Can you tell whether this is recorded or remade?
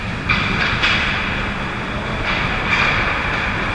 recorded